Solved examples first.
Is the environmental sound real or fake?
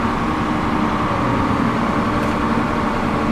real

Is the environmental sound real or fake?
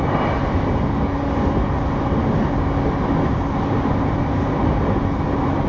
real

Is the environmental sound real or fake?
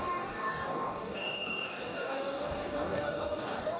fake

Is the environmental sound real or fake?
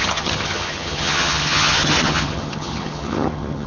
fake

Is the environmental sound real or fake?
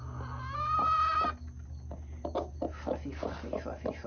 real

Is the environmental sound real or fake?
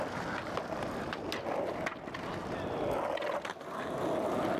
real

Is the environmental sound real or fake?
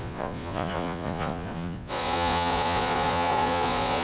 fake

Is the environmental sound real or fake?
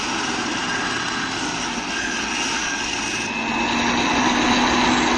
real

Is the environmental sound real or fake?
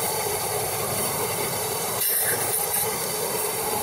fake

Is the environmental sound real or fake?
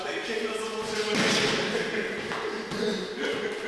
real